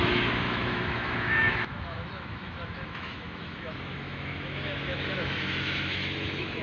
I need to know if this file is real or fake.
fake